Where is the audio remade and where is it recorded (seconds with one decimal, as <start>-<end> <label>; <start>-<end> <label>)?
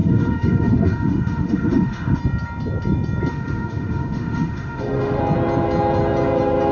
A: 0.0-2.2 remade; 2.2-3.3 recorded; 3.3-5.2 remade; 5.2-6.7 recorded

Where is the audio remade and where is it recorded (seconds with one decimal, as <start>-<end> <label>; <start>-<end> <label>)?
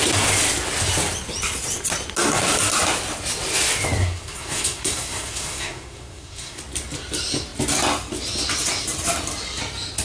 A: 0.0-4.0 recorded; 4.0-6.6 remade; 6.6-10.0 recorded